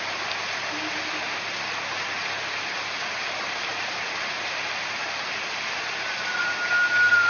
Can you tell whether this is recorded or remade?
recorded